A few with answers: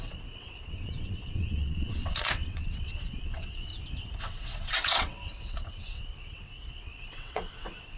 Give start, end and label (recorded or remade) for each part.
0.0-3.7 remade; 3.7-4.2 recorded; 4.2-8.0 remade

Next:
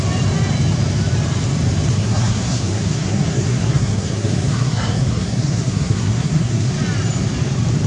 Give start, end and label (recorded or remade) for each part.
0.0-2.0 recorded; 2.0-6.7 remade; 6.7-7.9 recorded

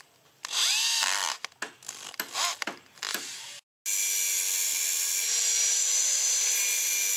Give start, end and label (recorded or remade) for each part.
0.0-7.2 recorded

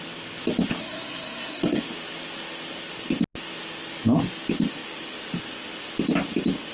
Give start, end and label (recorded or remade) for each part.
0.0-0.8 recorded; 0.8-1.8 remade; 1.8-6.7 recorded

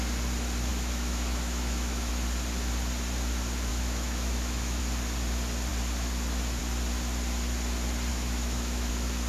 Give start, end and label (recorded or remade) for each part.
0.0-0.7 recorded; 0.7-2.1 remade; 2.1-3.7 recorded; 3.7-4.8 remade; 4.8-8.1 recorded; 8.1-8.9 remade; 8.9-9.3 recorded

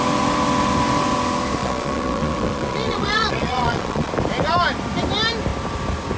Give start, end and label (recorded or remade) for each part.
0.0-1.6 recorded; 1.6-4.1 remade; 4.1-6.2 recorded